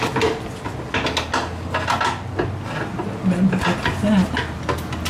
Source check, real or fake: real